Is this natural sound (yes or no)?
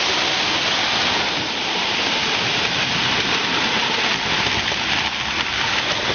yes